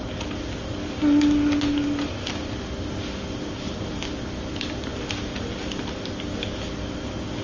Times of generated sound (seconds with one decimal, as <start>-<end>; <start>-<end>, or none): none